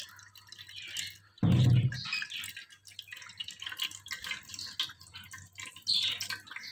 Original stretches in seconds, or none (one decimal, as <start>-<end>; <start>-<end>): 0.0-6.7